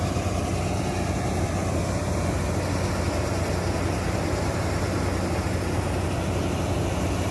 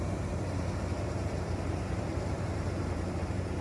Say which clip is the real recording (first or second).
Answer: first